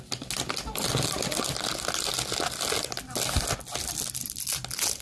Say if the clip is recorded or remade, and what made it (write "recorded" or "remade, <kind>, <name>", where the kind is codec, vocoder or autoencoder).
recorded